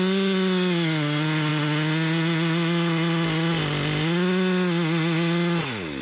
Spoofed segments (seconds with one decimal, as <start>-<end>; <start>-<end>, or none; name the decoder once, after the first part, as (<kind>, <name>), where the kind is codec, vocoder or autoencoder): none